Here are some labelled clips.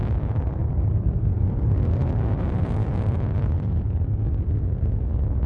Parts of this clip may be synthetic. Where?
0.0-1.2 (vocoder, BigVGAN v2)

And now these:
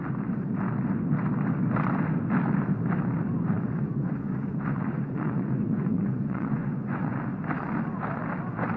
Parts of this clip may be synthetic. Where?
3.5-7.2 (vocoder, Vocos)

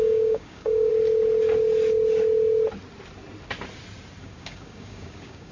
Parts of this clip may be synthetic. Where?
0.0-0.9 (codec, DAC); 4.2-5.5

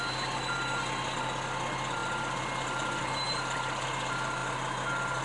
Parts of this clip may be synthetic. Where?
none

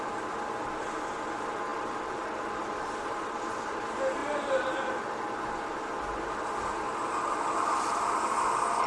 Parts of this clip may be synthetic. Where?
1.7-3.0 (vocoder, BigVGAN v2); 4.2-4.8